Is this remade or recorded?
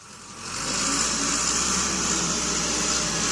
recorded